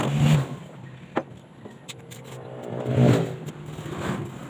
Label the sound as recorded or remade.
recorded